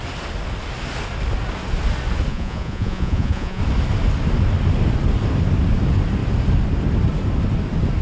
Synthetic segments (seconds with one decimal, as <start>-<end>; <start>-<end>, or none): 2.3-3.6